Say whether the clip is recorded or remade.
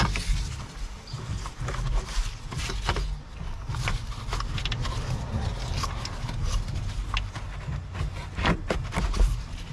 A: recorded